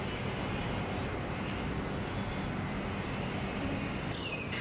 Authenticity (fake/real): real